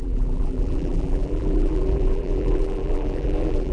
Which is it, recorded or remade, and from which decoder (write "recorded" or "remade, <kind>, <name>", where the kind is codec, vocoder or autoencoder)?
remade, vocoder, BigVGAN v2